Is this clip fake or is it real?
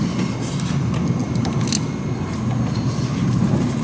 real